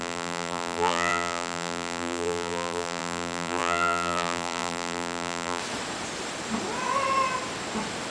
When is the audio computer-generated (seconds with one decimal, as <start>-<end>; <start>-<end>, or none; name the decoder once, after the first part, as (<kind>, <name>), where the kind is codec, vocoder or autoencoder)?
0.0-5.6 (vocoder, BigVGAN v2)